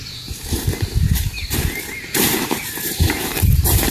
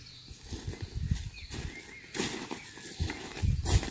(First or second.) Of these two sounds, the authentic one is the second